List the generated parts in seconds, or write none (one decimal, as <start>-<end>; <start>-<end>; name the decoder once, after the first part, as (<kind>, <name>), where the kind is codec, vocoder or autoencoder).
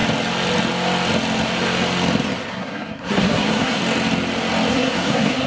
2.5-3.8 (codec, SNAC); 4.7-5.5